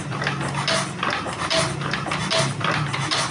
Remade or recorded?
recorded